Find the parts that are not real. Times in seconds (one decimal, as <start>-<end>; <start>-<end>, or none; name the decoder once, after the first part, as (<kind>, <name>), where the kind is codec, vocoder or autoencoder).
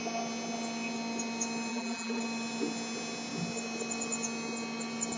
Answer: 1.7-2.2 (vocoder, BigVGAN v2)